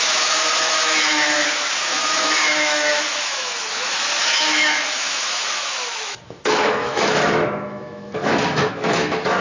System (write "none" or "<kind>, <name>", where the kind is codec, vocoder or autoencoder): autoencoder, DAC-VAE